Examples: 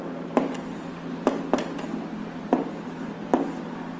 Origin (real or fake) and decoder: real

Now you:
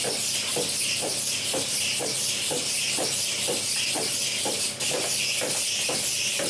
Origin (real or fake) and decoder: real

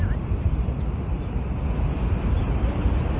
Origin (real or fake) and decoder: real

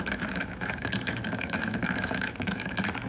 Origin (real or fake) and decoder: fake, autoencoder, DAC-VAE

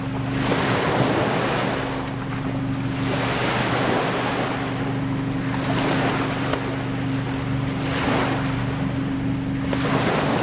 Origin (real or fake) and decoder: real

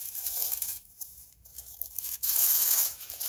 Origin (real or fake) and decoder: fake, autoencoder, DAC-VAE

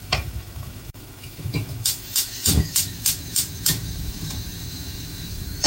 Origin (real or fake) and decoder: fake, autoencoder, DAC-VAE